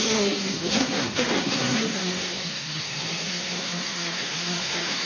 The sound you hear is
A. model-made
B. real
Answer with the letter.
A